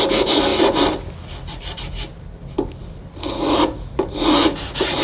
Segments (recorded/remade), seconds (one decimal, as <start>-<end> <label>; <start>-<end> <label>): 0.0-3.3 recorded; 3.3-5.0 remade